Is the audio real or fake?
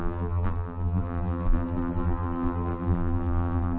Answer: fake